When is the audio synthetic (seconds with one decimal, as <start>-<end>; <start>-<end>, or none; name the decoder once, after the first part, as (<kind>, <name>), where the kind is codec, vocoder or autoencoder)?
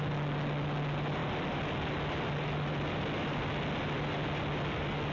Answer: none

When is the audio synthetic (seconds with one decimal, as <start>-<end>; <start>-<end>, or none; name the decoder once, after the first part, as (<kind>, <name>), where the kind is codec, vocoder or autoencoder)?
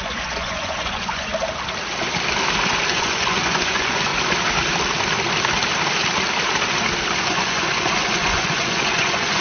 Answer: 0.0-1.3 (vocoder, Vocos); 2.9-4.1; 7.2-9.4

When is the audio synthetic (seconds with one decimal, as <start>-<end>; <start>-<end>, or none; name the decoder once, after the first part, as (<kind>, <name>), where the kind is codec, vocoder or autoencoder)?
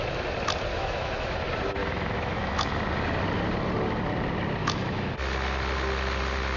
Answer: 0.7-1.4 (autoencoder, DAC-VAE); 1.8-2.7; 4.6-5.1